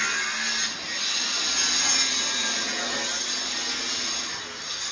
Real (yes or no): yes